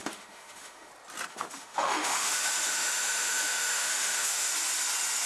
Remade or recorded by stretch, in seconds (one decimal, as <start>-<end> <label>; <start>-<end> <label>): 0.0-0.9 remade; 0.9-1.3 recorded; 1.3-4.5 remade; 4.5-5.3 recorded